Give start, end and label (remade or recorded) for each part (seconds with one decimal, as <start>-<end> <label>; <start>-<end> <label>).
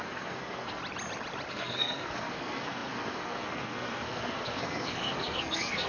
0.0-0.8 remade; 0.8-1.5 recorded; 1.5-5.9 remade